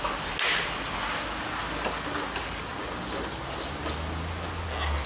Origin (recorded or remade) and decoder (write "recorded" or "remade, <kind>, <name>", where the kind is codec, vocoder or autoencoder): recorded